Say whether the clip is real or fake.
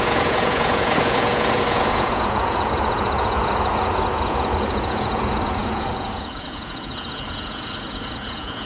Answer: fake